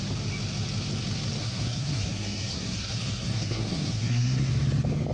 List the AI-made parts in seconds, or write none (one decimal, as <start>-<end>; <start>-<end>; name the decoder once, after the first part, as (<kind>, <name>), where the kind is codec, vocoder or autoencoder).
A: 1.4-4.5 (codec, SNAC)